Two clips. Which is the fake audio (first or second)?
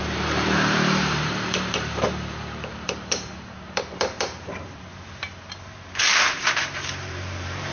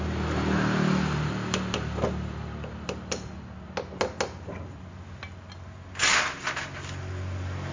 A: first